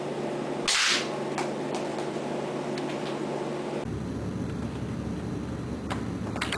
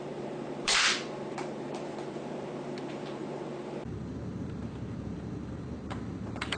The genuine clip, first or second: first